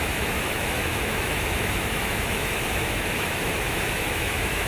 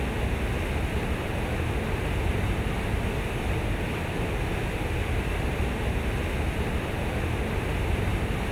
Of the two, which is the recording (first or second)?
second